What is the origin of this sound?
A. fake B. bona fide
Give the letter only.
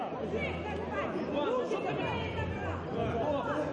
B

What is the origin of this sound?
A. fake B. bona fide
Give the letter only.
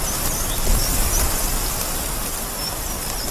B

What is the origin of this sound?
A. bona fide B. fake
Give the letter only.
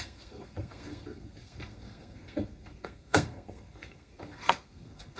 B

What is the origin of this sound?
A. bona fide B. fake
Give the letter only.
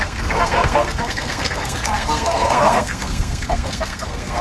B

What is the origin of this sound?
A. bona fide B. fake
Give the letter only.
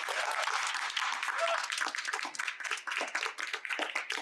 A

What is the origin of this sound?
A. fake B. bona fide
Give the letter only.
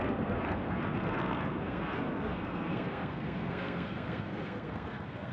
A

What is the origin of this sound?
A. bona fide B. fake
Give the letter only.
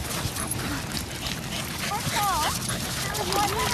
A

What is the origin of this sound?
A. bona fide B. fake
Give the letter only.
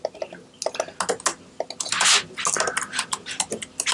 A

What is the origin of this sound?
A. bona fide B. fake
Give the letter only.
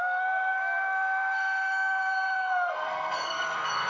B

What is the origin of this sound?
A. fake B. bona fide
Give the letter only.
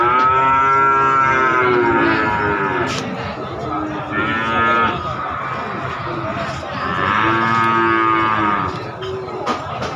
B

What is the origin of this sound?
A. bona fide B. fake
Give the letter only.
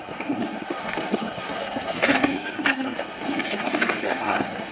B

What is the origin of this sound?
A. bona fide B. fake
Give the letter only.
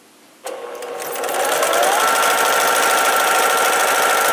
A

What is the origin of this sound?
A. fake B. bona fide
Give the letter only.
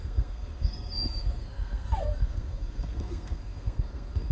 A